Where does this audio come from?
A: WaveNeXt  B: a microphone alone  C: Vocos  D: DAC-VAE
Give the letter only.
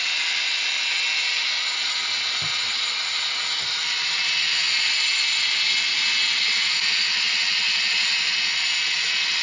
B